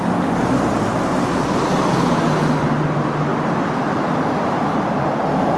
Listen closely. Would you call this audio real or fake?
real